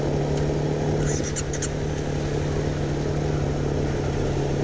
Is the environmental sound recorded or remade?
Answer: recorded